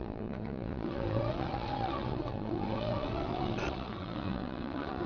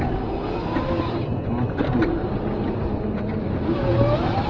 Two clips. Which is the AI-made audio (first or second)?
first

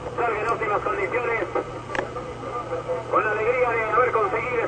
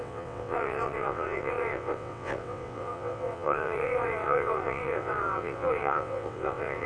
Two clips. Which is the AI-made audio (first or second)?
second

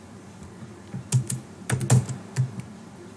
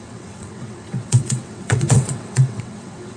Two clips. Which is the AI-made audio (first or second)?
second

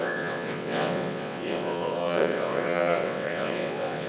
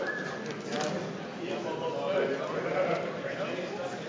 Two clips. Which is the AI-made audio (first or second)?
first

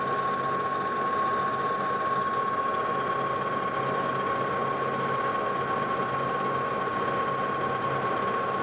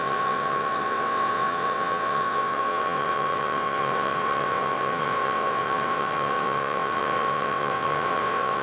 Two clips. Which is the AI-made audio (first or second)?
second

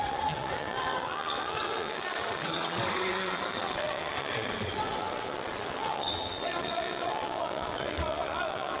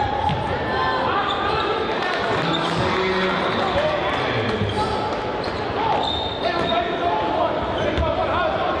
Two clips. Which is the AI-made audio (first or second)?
first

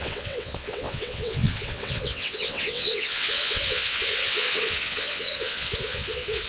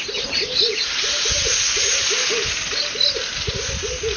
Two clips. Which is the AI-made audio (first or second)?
first